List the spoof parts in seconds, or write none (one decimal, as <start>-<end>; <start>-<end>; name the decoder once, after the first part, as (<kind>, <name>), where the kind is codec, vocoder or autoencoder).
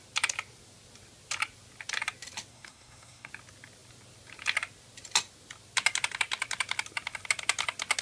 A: 2.5-3.3 (codec, SNAC)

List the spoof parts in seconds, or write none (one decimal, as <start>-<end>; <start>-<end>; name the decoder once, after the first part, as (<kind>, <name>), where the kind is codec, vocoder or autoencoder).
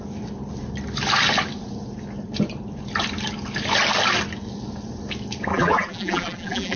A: 5.5-6.8 (vocoder, BigVGAN v2)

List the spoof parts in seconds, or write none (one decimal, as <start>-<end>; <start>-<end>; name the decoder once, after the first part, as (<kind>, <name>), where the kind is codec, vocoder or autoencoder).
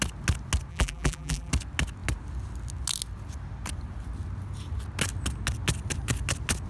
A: 0.7-1.5 (vocoder, BigVGAN v2)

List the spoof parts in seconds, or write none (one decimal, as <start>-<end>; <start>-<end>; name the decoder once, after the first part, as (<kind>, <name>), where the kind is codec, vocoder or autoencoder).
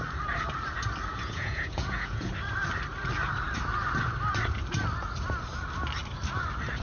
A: 1.1-2.3 (vocoder, Vocos)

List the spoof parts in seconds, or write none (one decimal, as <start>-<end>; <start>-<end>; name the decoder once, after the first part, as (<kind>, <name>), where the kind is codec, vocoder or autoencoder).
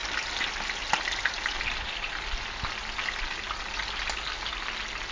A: none